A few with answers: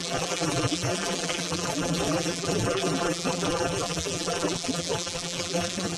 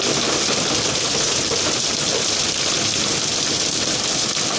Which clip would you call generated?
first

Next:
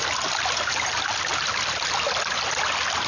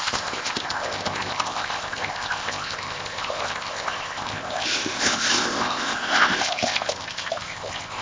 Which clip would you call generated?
second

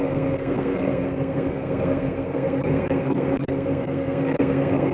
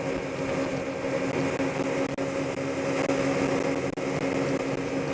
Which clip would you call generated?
first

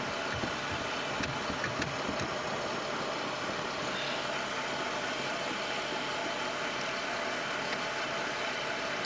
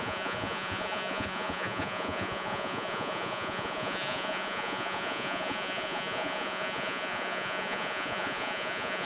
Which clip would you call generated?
second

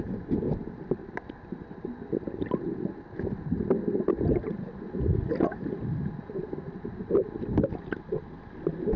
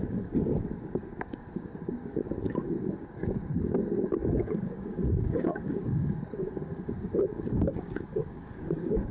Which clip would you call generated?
second